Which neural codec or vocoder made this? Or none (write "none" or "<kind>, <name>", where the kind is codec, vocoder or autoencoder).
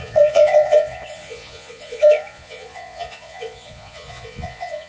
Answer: vocoder, Vocos